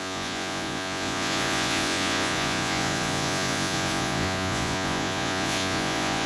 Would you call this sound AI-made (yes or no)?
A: yes